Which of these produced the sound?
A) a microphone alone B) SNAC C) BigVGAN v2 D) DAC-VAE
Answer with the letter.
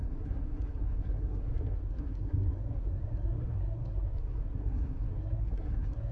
B